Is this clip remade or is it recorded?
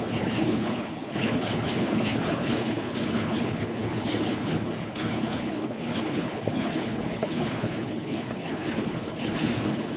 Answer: remade